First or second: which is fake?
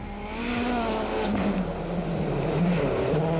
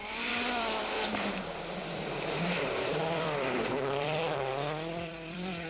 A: second